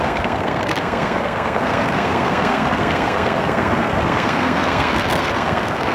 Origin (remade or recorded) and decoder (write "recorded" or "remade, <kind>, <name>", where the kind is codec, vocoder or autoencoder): remade, codec, SNAC